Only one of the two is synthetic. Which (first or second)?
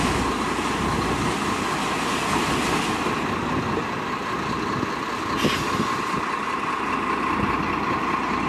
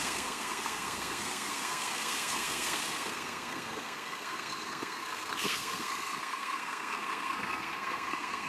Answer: second